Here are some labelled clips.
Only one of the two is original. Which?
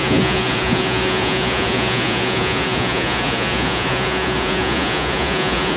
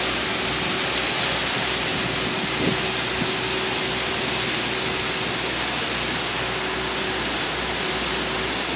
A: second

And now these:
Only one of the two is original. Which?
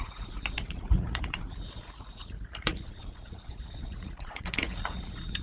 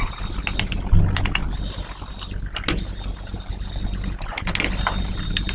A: second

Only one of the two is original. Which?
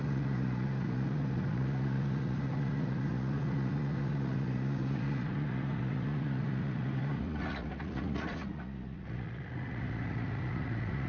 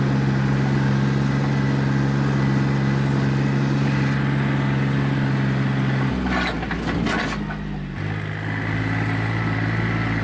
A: second